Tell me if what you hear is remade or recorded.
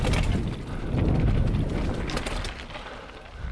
recorded